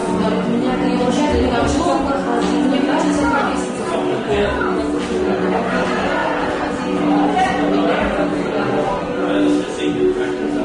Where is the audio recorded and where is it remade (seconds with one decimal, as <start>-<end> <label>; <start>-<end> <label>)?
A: 0.0-6.2 recorded; 6.2-7.0 remade; 7.0-8.3 recorded; 8.3-9.2 remade; 9.2-10.6 recorded